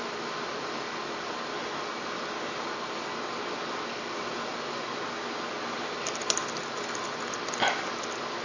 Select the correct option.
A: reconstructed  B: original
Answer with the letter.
B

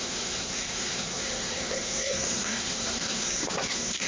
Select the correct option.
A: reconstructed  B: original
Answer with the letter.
A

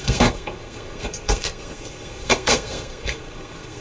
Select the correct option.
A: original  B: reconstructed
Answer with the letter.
B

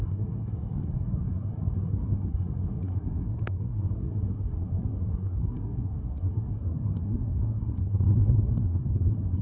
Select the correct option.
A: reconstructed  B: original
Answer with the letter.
A